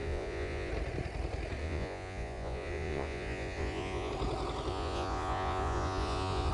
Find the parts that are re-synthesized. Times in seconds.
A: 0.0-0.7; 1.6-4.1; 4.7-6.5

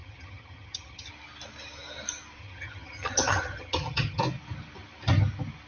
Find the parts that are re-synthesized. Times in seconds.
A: 0.0-1.1; 2.4-4.2

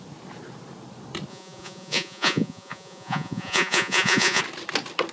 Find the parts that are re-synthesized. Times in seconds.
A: 1.3-4.4

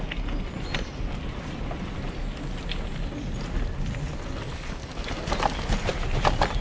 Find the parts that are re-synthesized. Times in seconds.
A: none

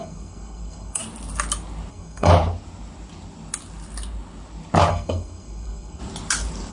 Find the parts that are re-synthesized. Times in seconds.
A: 0.0-1.0; 1.9-2.3; 4.9-6.0

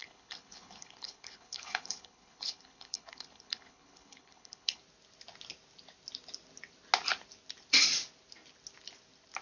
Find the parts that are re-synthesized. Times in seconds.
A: 0.0-4.8

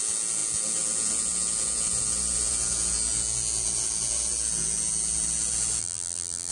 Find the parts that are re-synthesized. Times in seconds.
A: 5.8-6.5

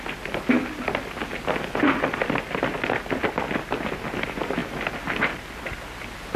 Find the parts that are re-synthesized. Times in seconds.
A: none